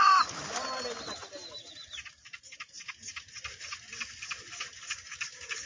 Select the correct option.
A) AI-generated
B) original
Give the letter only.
B